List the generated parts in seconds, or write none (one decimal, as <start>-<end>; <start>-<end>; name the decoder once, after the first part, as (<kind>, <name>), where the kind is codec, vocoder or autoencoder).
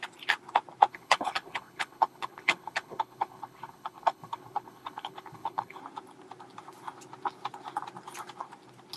0.9-5.8 (codec, HILCodec)